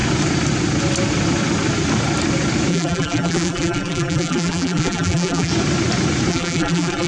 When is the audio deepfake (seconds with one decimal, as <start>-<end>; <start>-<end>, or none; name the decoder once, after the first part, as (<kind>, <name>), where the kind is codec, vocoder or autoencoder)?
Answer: 2.7-5.5 (vocoder, BigVGAN v2); 6.3-7.1